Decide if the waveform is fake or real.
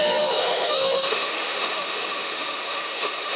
fake